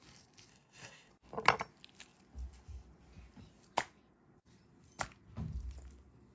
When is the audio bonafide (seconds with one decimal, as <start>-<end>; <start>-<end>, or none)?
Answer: 0.0-0.5; 1.1-6.3